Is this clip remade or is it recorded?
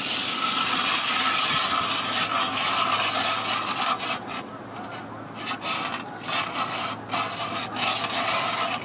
recorded